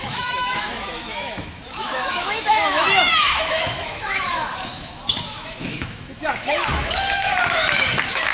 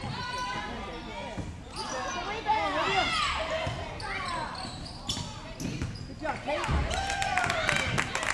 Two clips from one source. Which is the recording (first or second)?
second